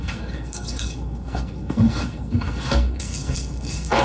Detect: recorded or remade remade